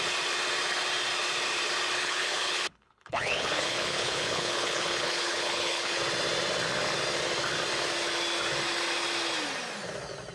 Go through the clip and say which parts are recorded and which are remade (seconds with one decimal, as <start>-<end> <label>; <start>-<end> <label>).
0.0-2.0 recorded; 2.0-6.0 remade; 6.0-10.3 recorded